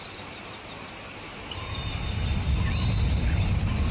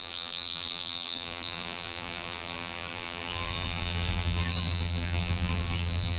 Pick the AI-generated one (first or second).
second